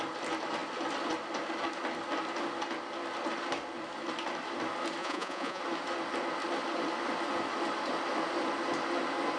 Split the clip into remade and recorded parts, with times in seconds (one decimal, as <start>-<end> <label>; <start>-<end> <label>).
0.0-5.0 recorded; 5.0-5.6 remade; 5.6-9.4 recorded